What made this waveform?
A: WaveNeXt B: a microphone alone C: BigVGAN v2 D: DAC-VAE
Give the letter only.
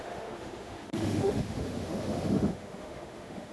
D